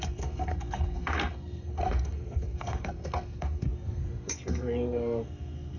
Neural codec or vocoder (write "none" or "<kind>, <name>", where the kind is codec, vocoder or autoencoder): codec, SNAC